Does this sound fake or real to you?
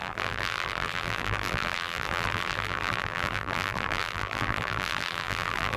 fake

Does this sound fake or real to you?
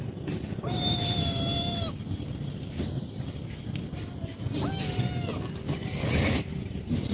real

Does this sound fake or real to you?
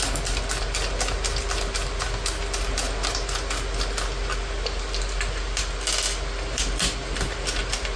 real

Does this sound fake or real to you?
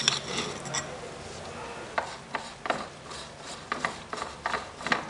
real